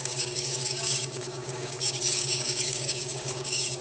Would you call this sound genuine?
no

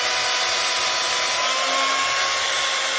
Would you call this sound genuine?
yes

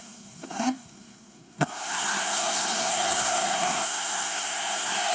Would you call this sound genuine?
no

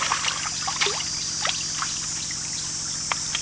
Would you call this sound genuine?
yes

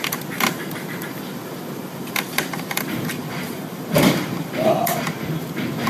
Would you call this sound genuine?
no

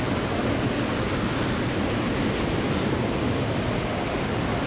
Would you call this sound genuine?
yes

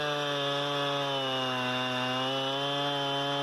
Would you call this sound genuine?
yes